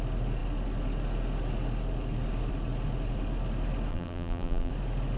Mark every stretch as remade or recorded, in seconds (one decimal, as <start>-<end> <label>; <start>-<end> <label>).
0.0-3.9 recorded; 3.9-4.7 remade; 4.7-5.2 recorded